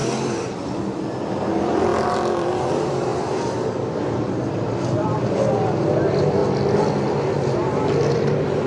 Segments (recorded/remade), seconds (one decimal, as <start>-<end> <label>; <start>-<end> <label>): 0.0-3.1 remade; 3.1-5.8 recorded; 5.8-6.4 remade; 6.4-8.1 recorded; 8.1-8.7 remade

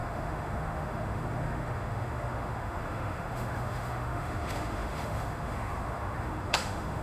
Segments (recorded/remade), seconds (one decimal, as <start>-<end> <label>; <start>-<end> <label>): 0.0-7.0 remade

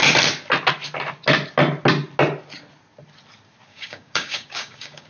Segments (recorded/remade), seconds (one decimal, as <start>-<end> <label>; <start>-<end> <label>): 0.0-3.7 recorded; 3.7-5.1 remade

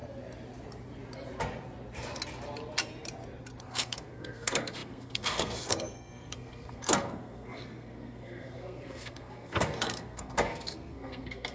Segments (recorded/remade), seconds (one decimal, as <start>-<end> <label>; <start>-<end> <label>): 0.0-3.6 recorded; 3.6-11.5 remade

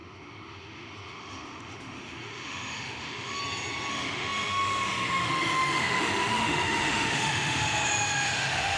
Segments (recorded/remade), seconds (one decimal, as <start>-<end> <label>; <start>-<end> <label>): 0.0-3.4 remade; 3.4-3.9 recorded; 3.9-8.8 remade